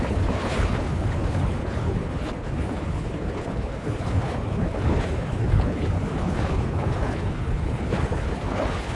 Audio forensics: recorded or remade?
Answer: remade